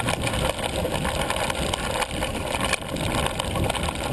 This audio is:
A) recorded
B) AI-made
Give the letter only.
A